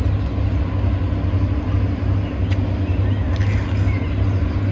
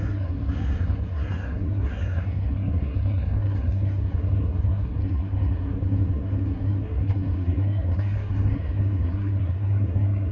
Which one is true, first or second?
first